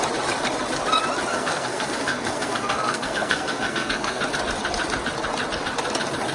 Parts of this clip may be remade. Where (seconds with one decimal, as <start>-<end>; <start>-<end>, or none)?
1.3-4.2